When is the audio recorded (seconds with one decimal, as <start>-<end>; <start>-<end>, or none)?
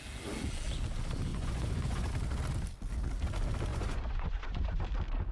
0.0-1.3; 2.1-3.7; 4.8-5.3